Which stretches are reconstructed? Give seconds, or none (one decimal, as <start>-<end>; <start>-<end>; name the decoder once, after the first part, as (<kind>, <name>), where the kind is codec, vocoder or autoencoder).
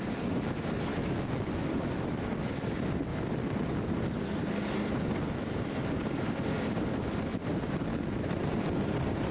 0.9-2.5 (autoencoder, DAC-VAE); 7.9-8.4